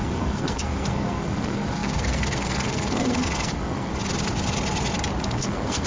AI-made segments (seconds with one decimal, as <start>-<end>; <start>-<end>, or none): 0.0-3.9; 5.2-5.9